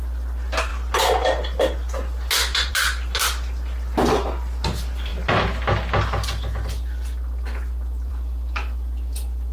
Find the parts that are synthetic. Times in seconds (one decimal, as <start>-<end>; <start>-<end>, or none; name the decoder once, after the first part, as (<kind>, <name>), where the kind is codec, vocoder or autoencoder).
none